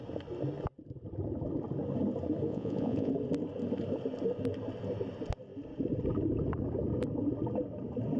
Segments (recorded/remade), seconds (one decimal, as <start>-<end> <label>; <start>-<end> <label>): 0.0-2.5 recorded; 2.5-3.1 remade; 3.1-8.2 recorded